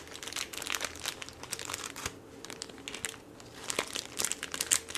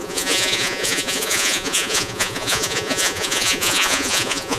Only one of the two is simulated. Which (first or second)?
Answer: second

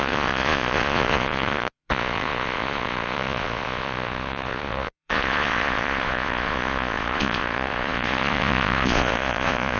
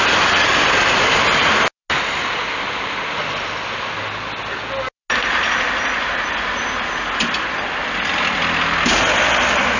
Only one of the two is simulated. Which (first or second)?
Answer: first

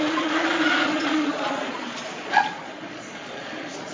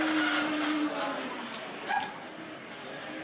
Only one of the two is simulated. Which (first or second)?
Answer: first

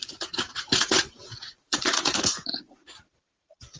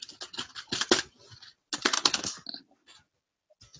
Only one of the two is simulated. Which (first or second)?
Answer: first